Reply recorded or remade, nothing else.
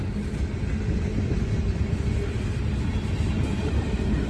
recorded